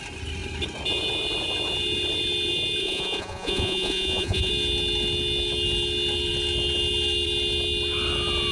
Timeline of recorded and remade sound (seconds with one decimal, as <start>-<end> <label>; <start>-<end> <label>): 0.0-2.8 recorded; 2.8-4.5 remade; 4.5-8.5 recorded